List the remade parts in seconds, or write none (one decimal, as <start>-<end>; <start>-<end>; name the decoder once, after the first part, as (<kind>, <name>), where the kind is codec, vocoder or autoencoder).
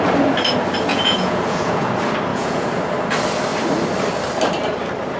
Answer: 0.9-1.9 (vocoder, Vocos); 2.3-2.8